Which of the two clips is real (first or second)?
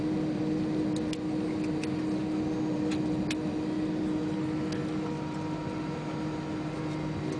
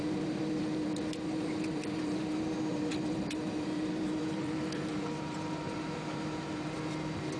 first